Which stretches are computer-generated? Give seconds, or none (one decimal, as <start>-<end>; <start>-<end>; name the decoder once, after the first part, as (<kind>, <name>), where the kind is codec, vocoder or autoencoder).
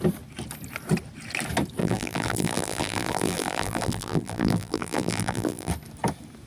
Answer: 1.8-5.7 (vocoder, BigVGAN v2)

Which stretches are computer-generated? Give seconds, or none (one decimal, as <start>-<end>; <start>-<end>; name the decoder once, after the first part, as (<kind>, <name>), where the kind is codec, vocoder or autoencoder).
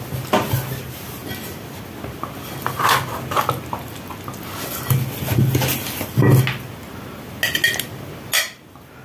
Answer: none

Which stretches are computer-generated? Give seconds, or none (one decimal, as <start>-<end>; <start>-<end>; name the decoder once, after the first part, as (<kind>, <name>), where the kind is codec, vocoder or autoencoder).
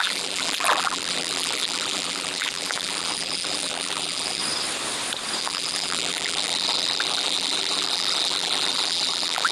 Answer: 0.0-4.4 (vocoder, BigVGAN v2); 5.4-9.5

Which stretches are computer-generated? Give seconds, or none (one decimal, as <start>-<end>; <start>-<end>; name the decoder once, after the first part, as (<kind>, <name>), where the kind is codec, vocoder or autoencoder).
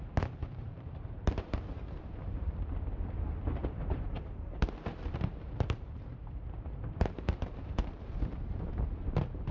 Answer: 0.4-2.8 (vocoder, BigVGAN v2); 3.6-8.7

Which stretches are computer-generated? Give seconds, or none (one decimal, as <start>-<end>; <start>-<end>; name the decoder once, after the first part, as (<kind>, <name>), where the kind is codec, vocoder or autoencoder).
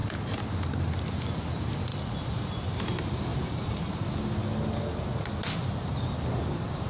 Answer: 1.9-2.8 (vocoder, BigVGAN v2); 3.3-3.9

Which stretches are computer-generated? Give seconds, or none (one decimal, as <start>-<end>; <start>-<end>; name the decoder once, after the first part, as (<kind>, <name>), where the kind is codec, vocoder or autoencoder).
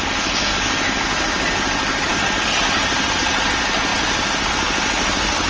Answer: none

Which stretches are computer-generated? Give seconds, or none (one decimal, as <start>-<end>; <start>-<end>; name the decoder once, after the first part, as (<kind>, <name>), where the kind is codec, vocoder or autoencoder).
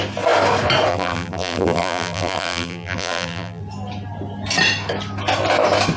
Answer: 0.9-3.6 (vocoder, BigVGAN v2)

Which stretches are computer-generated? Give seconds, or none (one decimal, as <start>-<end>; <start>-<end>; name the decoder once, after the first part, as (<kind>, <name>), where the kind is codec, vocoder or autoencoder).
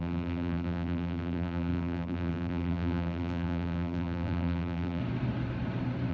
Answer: 0.0-5.0 (vocoder, BigVGAN v2)